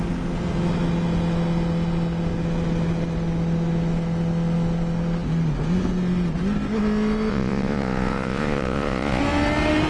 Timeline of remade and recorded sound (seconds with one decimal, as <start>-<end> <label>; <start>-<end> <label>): 0.0-7.3 recorded; 7.3-9.2 remade; 9.2-9.9 recorded